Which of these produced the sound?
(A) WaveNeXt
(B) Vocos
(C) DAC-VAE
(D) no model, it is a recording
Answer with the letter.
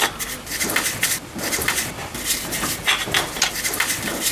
D